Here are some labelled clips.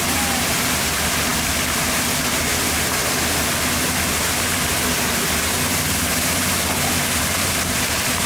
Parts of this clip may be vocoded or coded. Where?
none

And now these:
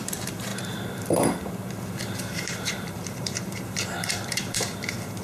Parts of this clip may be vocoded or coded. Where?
0.0-0.5 (vocoder, BigVGAN v2); 2.0-5.2

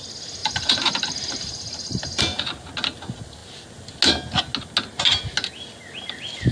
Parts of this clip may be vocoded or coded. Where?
0.4-2.2 (vocoder, BigVGAN v2)